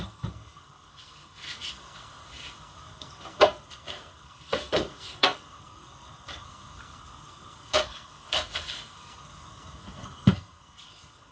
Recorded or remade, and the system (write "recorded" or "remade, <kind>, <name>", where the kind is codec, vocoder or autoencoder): remade, codec, SNAC